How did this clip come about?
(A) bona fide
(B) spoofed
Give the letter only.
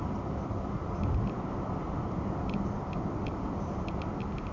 A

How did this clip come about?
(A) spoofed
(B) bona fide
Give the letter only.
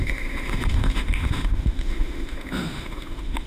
A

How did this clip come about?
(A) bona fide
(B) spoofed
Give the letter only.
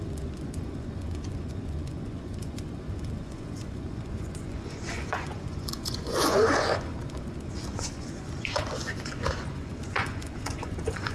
B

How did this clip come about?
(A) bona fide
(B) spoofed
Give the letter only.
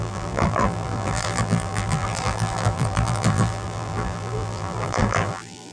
B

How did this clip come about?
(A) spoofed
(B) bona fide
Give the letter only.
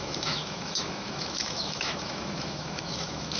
A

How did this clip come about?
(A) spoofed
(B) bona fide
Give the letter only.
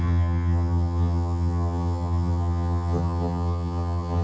A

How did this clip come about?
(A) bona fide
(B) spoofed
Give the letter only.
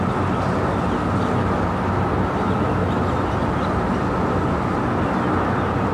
A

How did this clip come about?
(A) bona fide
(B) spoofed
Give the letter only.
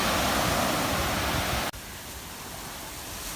A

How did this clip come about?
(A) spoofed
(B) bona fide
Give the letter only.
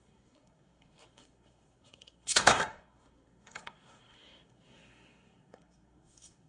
A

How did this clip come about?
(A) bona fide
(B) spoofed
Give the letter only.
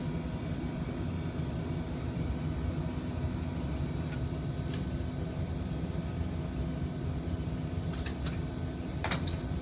A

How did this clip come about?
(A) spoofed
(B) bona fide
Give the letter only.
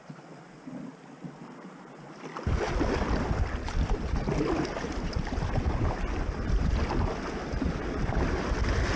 B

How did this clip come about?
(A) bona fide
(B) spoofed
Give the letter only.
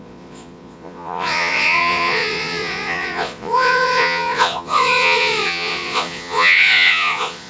B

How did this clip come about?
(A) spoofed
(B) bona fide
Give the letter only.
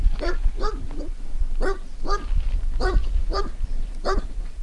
A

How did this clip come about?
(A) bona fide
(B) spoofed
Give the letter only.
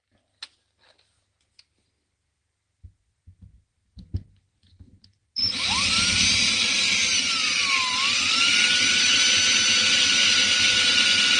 A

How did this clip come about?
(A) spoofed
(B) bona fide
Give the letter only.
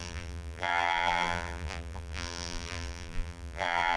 A